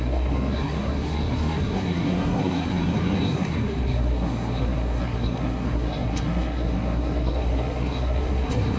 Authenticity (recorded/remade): remade